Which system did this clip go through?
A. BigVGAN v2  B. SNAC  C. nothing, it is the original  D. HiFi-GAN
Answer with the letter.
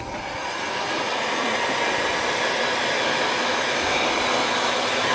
C